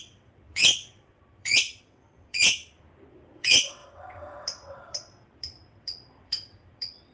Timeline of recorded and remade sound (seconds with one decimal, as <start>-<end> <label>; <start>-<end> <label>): 0.0-2.4 remade; 2.4-3.1 recorded; 3.1-7.1 remade